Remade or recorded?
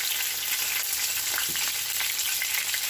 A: recorded